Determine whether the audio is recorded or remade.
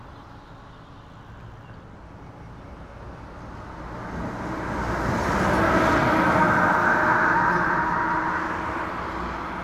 recorded